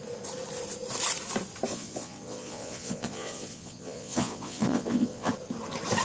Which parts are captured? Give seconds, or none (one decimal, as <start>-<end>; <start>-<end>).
0.0-1.7; 5.3-6.0

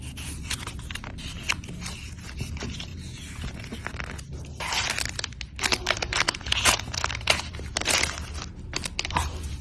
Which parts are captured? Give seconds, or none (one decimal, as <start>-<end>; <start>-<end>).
0.0-2.9; 3.6-6.1; 7.4-9.6

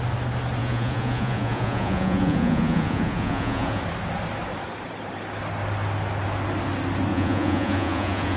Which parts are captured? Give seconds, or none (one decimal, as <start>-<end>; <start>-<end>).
0.0-0.6; 3.8-7.1

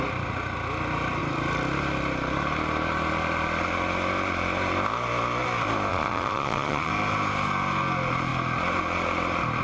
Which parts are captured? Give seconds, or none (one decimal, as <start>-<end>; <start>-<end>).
0.0-5.9; 6.9-9.6

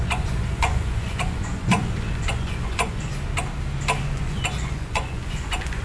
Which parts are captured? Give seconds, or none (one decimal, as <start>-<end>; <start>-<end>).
3.1-4.0

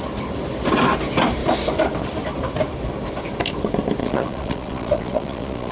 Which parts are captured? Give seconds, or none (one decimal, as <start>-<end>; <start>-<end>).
0.0-4.0